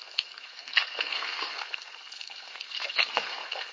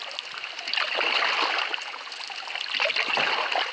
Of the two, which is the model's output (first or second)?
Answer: first